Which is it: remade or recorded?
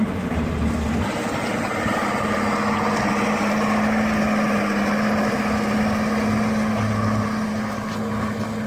recorded